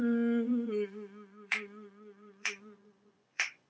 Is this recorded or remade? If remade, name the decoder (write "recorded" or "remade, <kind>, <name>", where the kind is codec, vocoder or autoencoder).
remade, vocoder, Vocos